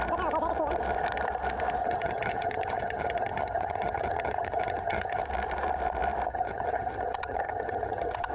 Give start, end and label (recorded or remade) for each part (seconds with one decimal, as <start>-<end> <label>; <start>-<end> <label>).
0.0-1.8 recorded; 1.8-5.2 remade; 5.2-6.3 recorded; 6.3-8.3 remade